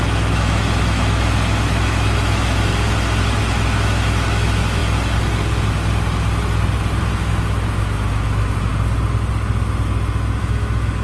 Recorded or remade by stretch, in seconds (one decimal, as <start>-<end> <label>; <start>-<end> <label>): 0.0-2.7 remade; 2.7-3.4 recorded; 3.4-4.8 remade; 4.8-7.0 recorded; 7.0-8.7 remade; 8.7-10.4 recorded; 10.4-11.0 remade